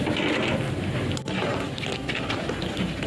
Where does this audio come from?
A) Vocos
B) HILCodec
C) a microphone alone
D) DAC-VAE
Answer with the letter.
C